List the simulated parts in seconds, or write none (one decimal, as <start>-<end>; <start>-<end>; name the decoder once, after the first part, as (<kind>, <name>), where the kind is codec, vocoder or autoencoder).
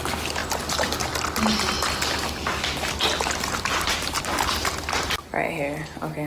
none